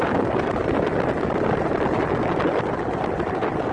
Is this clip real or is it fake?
real